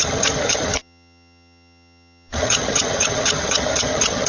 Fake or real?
fake